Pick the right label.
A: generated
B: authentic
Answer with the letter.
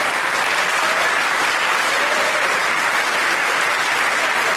B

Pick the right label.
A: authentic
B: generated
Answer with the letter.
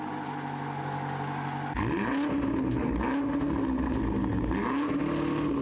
A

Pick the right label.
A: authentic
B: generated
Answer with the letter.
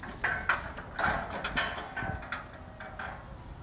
A